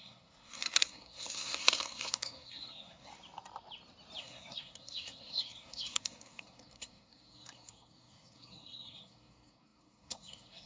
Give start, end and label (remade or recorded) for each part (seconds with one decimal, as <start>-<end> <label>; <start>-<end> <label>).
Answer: 0.0-3.1 remade; 3.1-4.2 recorded; 4.2-10.7 remade